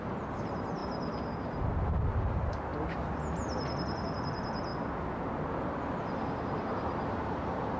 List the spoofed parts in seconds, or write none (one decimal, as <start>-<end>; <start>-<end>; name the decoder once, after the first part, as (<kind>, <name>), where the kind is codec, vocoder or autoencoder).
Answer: 0.0-0.8 (vocoder, BigVGAN v2); 2.1-2.7; 4.0-4.7; 7.1-7.8